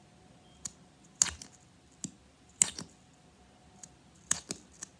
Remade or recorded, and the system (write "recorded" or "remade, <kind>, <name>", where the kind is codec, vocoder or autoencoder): recorded